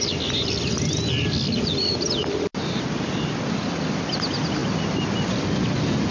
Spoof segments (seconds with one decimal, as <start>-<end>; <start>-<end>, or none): none